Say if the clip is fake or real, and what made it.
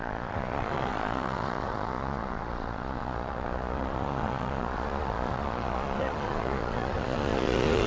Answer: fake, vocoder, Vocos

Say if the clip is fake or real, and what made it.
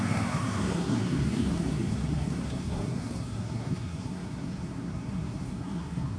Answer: fake, codec, SNAC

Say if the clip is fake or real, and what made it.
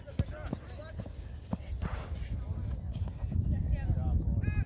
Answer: real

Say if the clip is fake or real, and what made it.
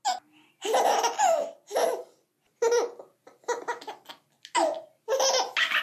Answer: real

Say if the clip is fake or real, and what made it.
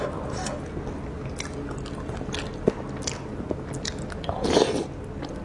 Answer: real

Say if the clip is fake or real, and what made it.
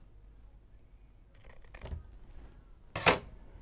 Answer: real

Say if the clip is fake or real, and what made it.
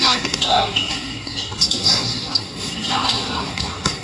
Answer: fake, codec, SNAC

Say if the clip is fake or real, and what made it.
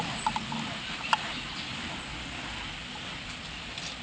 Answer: real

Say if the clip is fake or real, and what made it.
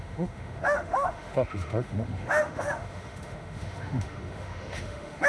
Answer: fake, autoencoder, DAC-VAE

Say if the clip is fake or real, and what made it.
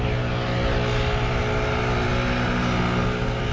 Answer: real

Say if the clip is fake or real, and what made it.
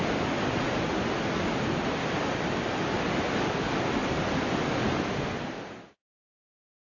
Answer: real